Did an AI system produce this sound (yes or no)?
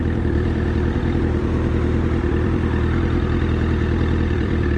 yes